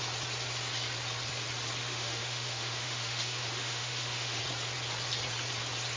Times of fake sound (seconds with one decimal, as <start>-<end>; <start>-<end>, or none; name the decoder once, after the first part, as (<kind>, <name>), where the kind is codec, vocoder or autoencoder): 1.8-4.4 (autoencoder, DAC-VAE)